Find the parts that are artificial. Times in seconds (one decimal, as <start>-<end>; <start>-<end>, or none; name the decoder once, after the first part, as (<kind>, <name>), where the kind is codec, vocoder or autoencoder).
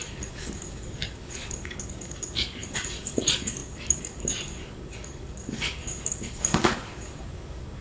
0.0-7.8 (codec, DAC)